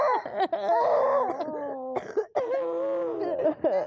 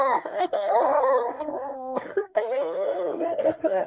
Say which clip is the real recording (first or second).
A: first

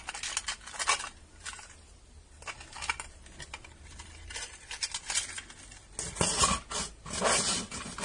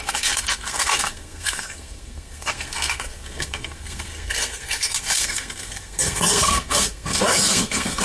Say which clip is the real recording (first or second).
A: first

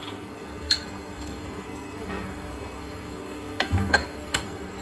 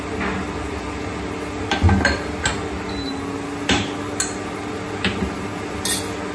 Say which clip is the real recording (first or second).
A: second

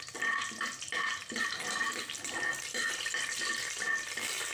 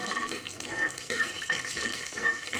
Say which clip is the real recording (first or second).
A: first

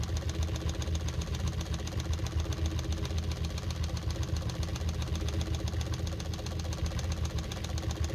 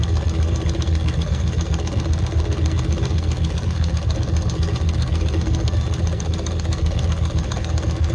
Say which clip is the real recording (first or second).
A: first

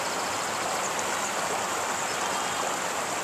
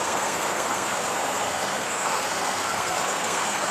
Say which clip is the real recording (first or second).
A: first